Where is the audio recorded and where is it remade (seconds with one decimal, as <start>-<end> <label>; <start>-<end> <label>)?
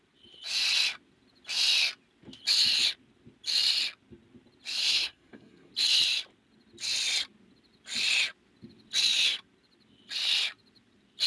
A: 0.0-4.8 recorded; 4.8-5.7 remade; 5.7-11.3 recorded